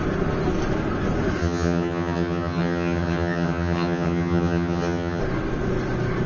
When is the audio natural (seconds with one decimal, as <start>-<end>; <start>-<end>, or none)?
0.0-1.4; 5.2-6.3